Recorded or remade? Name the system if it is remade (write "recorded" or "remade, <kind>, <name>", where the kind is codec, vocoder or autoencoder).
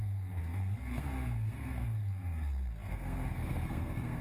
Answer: remade, codec, SNAC